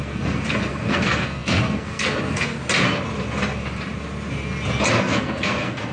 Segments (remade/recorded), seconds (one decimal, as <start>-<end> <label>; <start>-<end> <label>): 0.0-2.6 remade; 2.6-5.0 recorded; 5.0-5.9 remade